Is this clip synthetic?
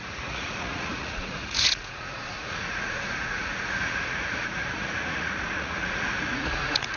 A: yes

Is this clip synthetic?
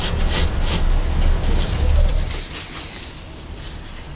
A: no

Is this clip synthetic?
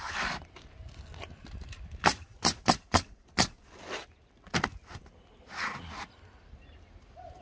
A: no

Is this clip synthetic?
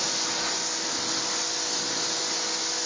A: no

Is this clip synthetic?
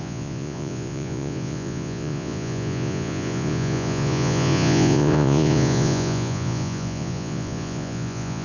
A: yes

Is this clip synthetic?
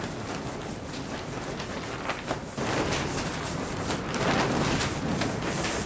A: no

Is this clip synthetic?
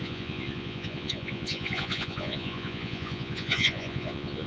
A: yes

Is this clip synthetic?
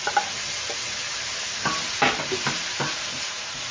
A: no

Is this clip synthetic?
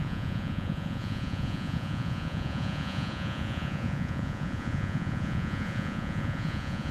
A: yes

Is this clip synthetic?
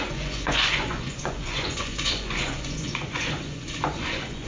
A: yes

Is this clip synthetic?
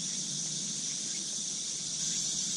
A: no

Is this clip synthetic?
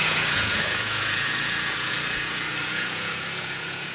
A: yes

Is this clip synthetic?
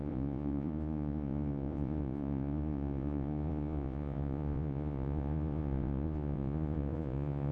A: yes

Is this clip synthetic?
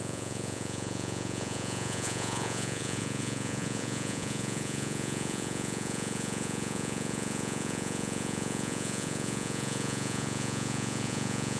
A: yes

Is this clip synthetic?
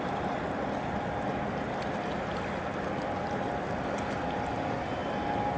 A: no